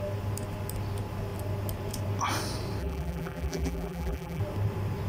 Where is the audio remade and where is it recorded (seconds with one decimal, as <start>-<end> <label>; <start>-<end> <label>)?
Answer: 0.0-2.8 recorded; 2.8-4.4 remade; 4.4-5.1 recorded